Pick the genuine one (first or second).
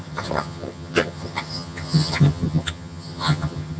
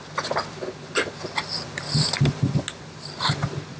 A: second